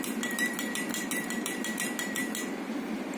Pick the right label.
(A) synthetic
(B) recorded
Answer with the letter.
B